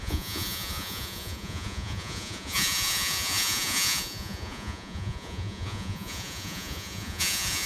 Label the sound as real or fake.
fake